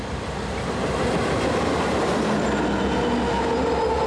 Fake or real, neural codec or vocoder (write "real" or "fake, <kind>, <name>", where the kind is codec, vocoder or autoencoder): real